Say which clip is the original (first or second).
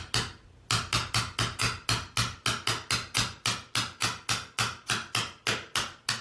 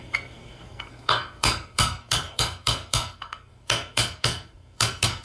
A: first